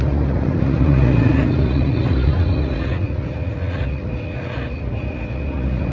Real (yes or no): no